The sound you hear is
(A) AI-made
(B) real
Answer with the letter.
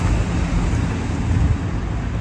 B